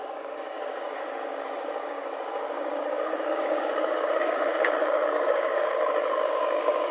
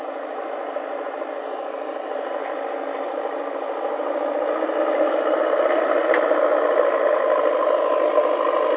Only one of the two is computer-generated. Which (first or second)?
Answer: first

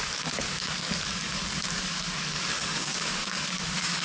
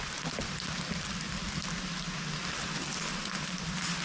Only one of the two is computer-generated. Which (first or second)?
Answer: first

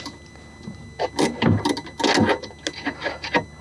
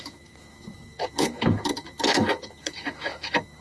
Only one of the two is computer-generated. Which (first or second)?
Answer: second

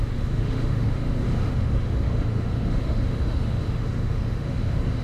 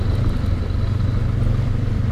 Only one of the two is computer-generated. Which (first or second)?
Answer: first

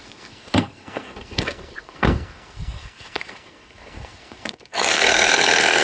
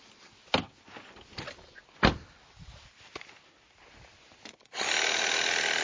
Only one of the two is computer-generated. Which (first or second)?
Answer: first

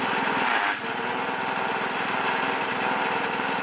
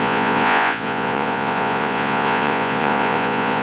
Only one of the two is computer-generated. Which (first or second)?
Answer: second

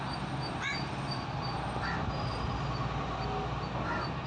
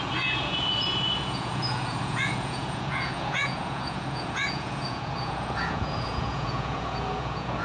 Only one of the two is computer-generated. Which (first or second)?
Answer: second